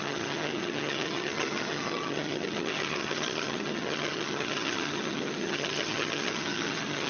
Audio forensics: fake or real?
fake